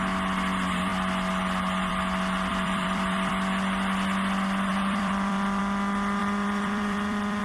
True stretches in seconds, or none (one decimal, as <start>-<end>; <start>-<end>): 0.0-2.5; 3.3-4.7; 5.6-6.2